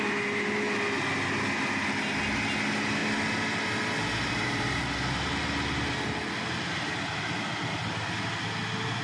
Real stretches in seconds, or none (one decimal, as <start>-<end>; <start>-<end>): 0.0-9.0